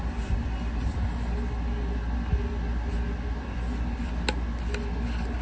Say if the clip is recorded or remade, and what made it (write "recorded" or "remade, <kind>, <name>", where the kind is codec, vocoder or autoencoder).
recorded